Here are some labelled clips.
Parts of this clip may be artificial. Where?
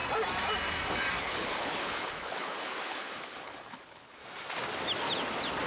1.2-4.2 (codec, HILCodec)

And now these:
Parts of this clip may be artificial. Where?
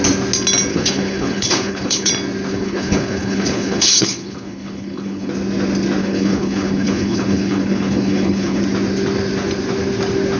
0.7-2.1 (codec, HILCodec); 2.5-5.3; 6.0-8.6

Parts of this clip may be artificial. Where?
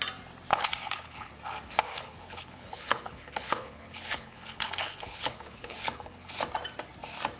0.5-1.3 (codec, HILCodec); 1.9-6.3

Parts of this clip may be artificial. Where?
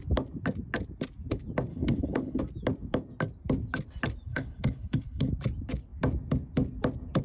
1.7-2.4 (codec, HILCodec); 4.3-5.3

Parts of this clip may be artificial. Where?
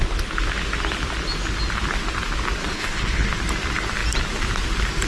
2.6-3.3 (codec, HILCodec)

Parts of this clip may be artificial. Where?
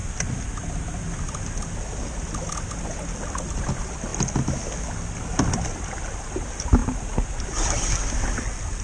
none